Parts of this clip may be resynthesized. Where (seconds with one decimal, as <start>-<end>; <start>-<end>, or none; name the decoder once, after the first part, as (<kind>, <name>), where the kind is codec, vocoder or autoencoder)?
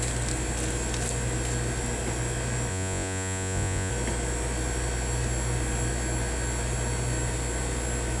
2.7-3.9 (vocoder, Vocos)